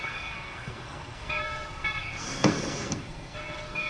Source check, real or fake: fake